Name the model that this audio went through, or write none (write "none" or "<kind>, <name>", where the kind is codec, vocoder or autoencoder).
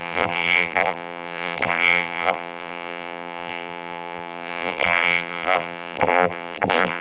vocoder, BigVGAN v2